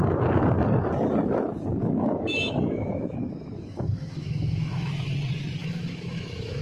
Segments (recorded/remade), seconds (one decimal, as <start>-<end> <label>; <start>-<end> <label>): 0.0-1.8 recorded; 1.8-4.9 remade; 4.9-5.6 recorded; 5.6-6.6 remade